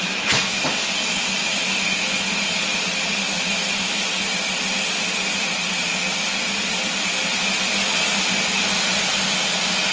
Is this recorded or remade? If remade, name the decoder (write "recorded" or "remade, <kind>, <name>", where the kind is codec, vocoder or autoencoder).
recorded